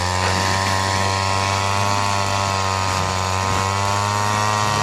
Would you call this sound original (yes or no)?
yes